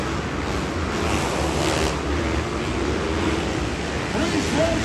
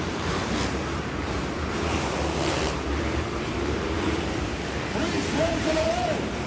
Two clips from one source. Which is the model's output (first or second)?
second